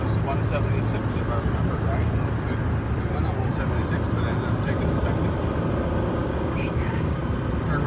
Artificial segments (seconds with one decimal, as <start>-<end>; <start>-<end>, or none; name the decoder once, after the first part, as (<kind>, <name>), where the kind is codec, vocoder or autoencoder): 6.2-7.2 (codec, DAC)